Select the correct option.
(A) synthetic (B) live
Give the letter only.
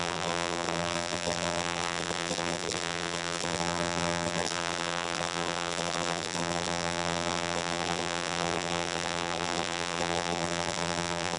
A